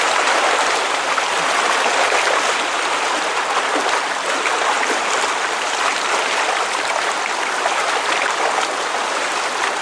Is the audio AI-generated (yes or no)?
no